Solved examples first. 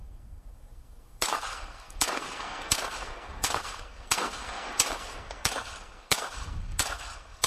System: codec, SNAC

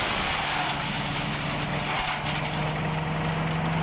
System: none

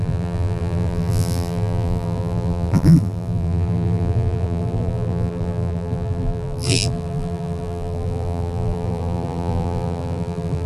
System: vocoder, BigVGAN v2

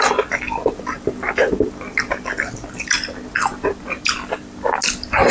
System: none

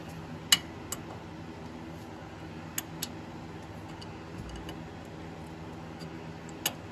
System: none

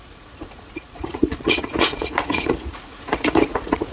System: vocoder, Vocos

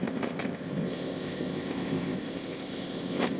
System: codec, ZipCodec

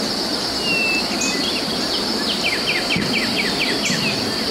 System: none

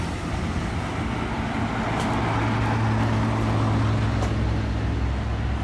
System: none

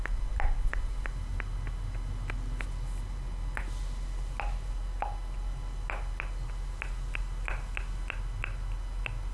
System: none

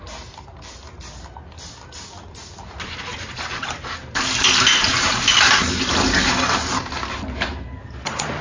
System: none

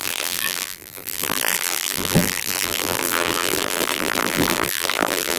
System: vocoder, BigVGAN v2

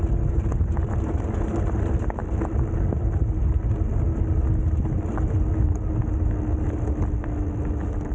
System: none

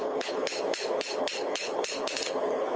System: codec, HILCodec